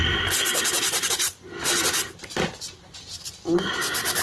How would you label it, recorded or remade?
recorded